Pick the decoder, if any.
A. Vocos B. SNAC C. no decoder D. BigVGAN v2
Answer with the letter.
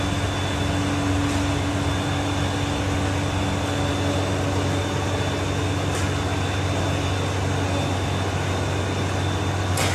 C